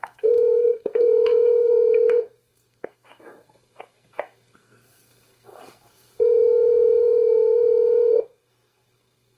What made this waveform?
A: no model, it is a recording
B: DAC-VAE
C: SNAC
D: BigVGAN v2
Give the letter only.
C